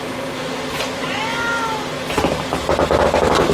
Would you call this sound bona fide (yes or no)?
yes